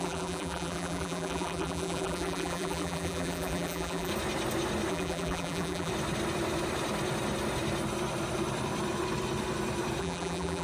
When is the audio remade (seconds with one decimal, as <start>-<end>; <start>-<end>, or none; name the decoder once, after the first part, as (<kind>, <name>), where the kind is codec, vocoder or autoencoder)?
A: 0.0-4.1 (vocoder, BigVGAN v2); 4.9-5.9; 10.0-10.6

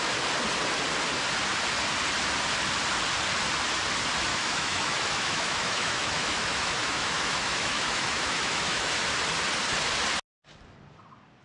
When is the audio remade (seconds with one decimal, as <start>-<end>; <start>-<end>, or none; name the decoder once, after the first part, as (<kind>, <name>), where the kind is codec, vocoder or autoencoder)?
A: 4.3-8.9 (autoencoder, DAC-VAE)